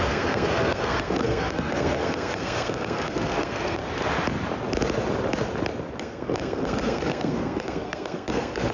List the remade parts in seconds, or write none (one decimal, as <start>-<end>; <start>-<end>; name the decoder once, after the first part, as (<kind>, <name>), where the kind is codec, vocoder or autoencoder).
0.0-3.8 (codec, SNAC); 6.0-8.7